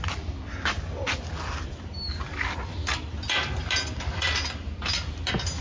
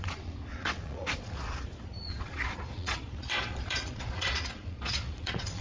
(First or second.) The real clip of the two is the first